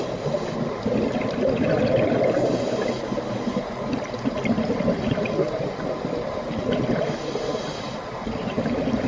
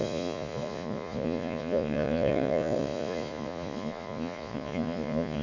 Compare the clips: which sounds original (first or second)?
first